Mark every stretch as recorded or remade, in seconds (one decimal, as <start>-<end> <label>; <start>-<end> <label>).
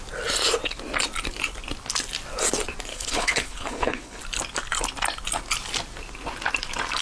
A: 0.0-2.9 recorded; 2.9-4.2 remade; 4.2-7.0 recorded